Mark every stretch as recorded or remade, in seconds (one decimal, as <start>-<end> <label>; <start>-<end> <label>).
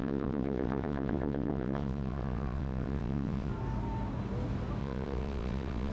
0.0-3.5 remade; 3.5-4.8 recorded; 4.8-5.9 remade